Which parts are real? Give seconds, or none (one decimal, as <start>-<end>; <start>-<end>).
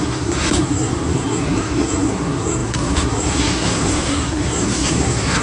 none